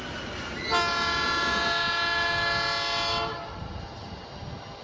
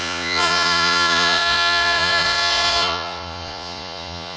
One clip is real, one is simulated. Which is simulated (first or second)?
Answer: second